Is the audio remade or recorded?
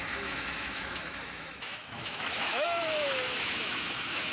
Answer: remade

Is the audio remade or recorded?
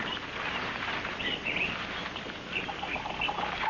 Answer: recorded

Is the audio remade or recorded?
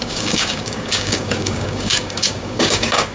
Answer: remade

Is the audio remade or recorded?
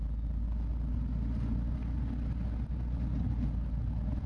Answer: recorded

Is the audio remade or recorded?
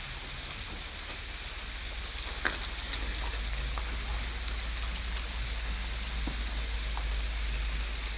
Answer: recorded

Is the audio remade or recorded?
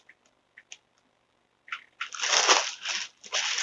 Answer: recorded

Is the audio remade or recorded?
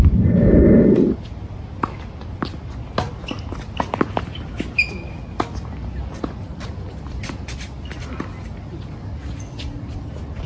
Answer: recorded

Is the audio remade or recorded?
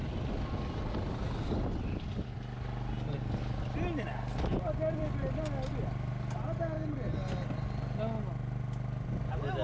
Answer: recorded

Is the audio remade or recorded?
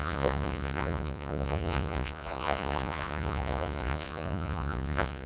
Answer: remade